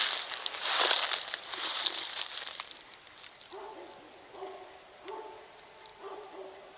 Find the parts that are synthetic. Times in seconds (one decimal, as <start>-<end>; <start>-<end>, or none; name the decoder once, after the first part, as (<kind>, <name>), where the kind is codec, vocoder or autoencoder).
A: 5.9-6.8 (vocoder, BigVGAN v2)